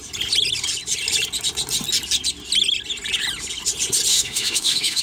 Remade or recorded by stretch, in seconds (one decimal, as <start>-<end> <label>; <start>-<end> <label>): 0.0-4.1 recorded; 4.1-5.0 remade

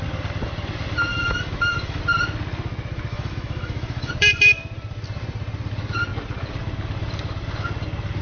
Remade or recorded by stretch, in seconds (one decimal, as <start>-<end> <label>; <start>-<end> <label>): 0.0-1.1 recorded; 1.1-2.0 remade; 2.0-3.1 recorded; 3.1-4.1 remade; 4.1-8.2 recorded

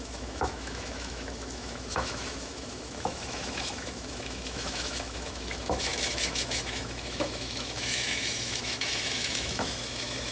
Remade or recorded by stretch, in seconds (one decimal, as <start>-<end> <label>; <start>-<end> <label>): 0.0-10.3 remade